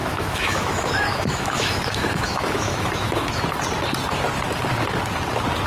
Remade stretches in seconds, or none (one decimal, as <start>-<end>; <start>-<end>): 0.0-3.4